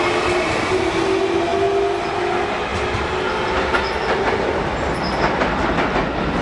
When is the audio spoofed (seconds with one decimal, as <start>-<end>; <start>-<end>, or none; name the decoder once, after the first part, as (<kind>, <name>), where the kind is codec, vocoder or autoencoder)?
none